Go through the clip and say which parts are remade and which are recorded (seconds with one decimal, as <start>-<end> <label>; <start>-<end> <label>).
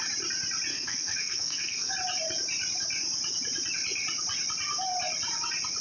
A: 0.0-0.7 recorded; 0.7-1.9 remade; 1.9-5.8 recorded